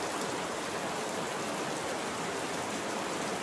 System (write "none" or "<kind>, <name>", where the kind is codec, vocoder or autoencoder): none